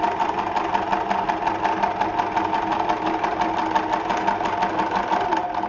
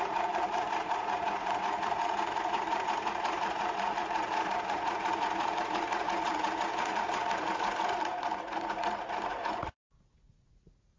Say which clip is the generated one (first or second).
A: second